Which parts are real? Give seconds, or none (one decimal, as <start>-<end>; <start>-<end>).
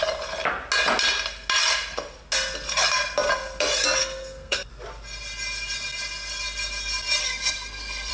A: 0.0-4.0; 4.7-7.2